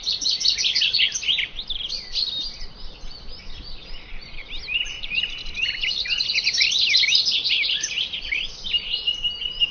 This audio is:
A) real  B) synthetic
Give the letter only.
A